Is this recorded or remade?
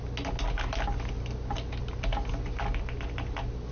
recorded